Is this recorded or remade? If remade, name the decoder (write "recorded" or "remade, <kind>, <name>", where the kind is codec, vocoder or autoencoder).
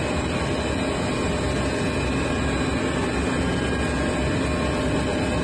recorded